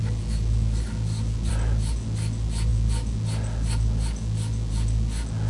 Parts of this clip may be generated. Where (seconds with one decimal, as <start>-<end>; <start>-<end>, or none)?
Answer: none